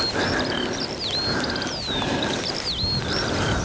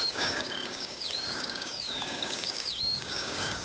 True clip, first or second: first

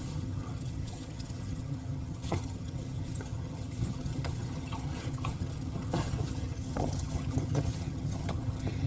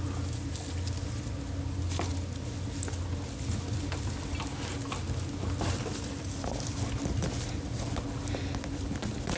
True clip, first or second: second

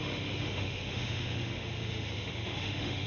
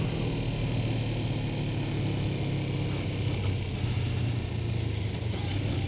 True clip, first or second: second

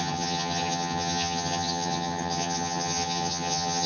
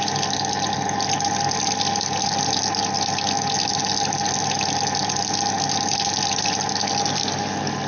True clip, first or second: second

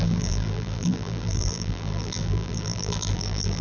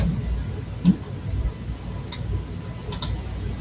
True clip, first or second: second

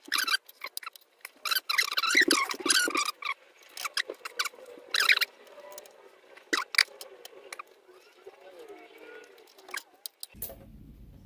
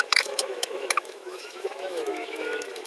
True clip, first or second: first